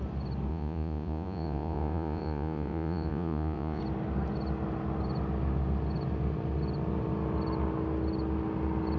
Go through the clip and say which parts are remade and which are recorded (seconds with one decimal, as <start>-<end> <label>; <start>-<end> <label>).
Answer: 0.0-0.5 recorded; 0.5-3.8 remade; 3.8-9.0 recorded